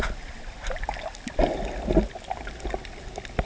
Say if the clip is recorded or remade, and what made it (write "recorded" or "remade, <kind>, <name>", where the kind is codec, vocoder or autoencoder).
recorded